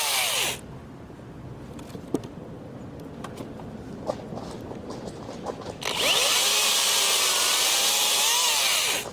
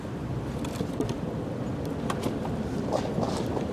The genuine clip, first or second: first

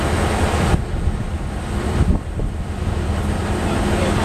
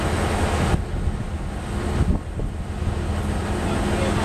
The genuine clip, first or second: second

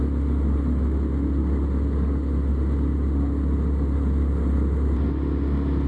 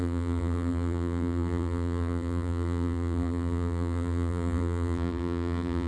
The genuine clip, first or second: first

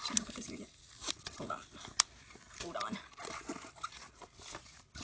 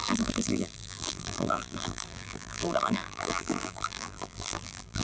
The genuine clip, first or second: first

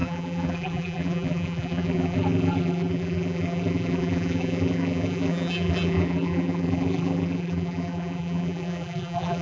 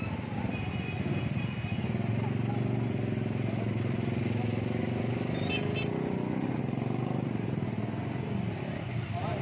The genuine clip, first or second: second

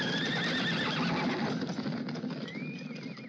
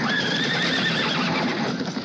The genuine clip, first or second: first